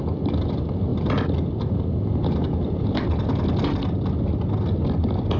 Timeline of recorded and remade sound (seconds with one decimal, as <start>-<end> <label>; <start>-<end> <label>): 0.0-5.4 recorded